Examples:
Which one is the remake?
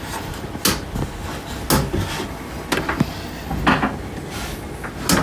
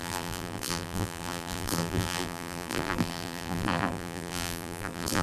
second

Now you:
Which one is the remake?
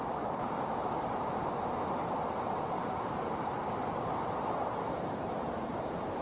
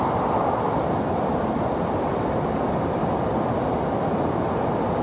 first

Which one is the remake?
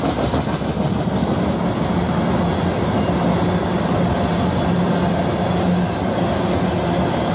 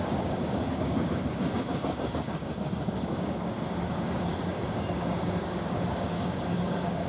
second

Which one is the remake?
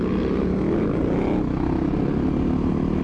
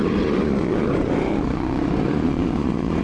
second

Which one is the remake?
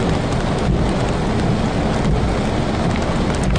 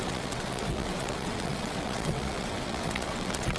second